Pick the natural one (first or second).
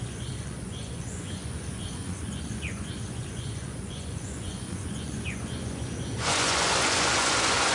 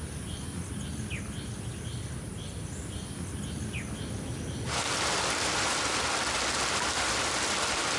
second